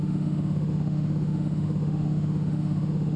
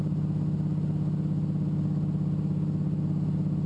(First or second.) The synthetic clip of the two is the first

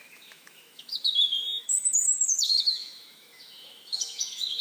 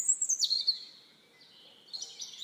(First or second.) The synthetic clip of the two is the first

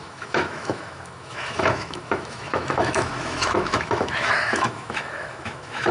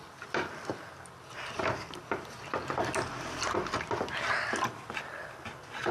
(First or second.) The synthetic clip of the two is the first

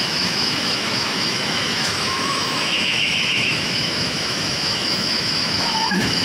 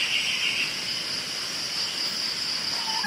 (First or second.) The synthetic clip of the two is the first